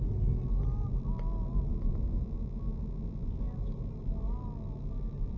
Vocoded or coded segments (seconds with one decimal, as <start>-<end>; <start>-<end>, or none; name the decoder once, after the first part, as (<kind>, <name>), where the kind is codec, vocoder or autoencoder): none